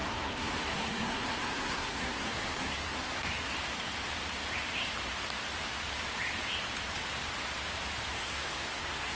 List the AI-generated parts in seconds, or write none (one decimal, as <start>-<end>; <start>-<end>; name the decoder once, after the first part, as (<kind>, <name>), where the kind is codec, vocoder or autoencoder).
0.0-3.3 (codec, SNAC); 8.1-9.1